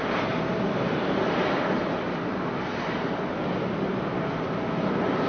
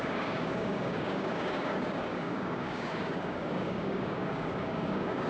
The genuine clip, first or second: first